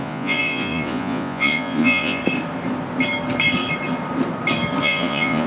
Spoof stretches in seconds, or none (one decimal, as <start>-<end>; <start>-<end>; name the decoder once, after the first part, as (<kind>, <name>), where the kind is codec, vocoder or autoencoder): 0.0-2.2 (vocoder, Vocos); 4.8-5.5